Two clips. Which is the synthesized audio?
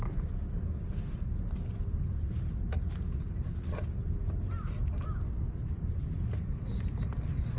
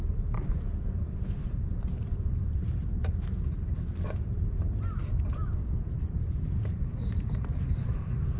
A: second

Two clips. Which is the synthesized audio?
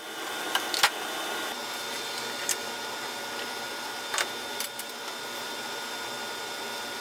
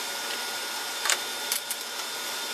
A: second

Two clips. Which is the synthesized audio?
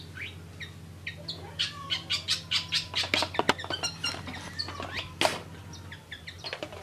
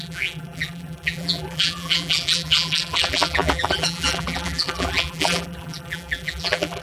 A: second